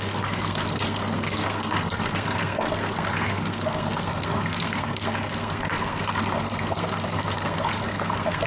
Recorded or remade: remade